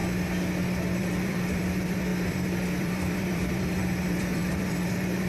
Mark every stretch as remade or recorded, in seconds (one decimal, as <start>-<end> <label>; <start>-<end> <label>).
0.0-1.0 recorded; 1.0-5.3 remade